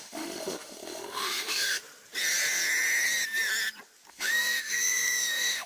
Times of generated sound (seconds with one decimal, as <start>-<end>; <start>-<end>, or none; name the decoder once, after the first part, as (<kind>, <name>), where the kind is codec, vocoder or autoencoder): 0.0-1.8 (autoencoder, DAC-VAE); 4.1-5.7